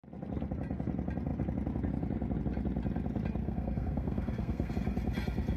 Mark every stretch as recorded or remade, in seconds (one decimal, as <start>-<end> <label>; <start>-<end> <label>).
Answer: 0.0-3.4 recorded; 3.4-4.7 remade; 4.7-5.6 recorded